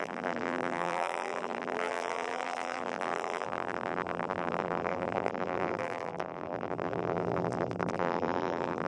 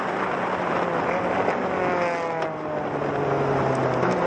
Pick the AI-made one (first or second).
first